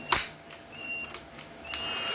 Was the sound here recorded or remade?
recorded